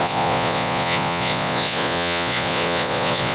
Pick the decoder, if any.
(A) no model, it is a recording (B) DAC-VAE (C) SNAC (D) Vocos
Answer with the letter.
D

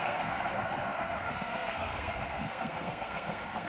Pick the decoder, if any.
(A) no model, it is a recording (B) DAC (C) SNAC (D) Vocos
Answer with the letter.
C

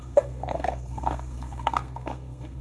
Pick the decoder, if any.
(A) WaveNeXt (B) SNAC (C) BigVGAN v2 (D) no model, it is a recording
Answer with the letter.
B